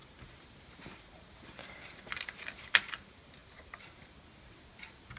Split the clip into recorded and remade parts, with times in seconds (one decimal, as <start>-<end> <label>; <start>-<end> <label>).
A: 0.0-2.8 remade; 2.8-3.4 recorded; 3.4-4.1 remade; 4.1-5.2 recorded